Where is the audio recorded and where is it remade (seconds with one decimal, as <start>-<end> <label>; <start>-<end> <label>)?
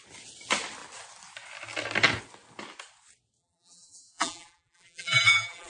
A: 0.0-3.4 recorded; 3.4-5.7 remade